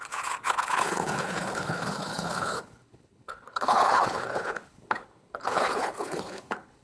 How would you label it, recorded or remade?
remade